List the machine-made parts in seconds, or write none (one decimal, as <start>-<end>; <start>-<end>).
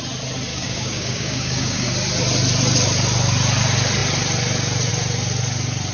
0.5-1.9